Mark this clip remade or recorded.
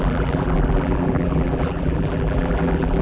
remade